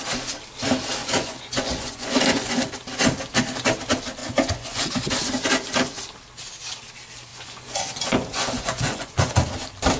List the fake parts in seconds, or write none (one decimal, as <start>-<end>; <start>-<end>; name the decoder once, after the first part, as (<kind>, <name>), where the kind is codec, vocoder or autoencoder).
1.0-2.7 (vocoder, Vocos); 4.2-5.1; 7.3-9.3